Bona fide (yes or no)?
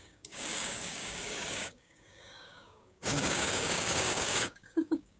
no